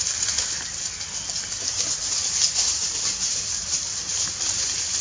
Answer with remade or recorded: recorded